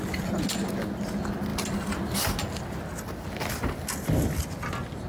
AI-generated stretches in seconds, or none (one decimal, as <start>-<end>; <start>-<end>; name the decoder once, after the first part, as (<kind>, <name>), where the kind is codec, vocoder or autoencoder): none